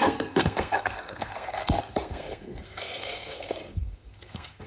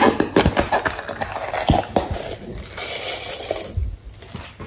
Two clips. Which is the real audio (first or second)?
second